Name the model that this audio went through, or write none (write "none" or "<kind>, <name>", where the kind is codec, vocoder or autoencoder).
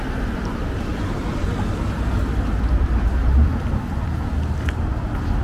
none